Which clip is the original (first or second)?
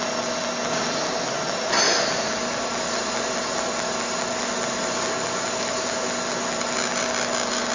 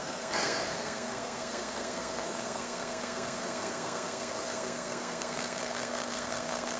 first